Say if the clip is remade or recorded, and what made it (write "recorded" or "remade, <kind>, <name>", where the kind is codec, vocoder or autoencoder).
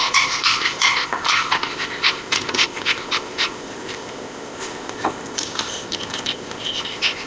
remade, codec, ZipCodec